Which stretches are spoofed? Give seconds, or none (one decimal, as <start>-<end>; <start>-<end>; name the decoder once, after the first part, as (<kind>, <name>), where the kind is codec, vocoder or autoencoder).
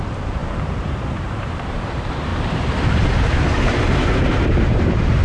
0.0-0.4 (vocoder, BigVGAN v2); 1.1-2.3; 4.2-5.2